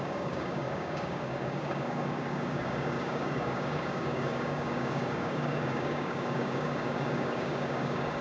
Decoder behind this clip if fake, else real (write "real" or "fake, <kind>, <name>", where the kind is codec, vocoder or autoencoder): fake, codec, DAC